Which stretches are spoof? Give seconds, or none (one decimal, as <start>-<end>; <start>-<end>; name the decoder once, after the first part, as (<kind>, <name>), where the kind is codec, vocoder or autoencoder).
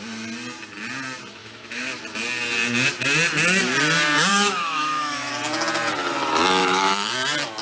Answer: 1.4-2.0 (autoencoder, DAC-VAE); 4.3-5.3; 6.6-7.1